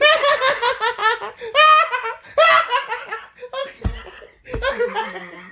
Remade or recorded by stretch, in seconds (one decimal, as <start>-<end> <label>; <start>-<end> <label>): 0.0-5.5 recorded